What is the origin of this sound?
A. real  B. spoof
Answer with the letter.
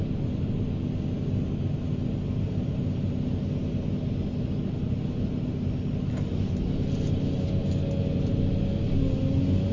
A